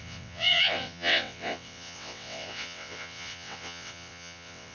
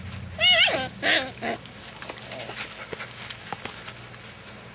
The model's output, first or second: first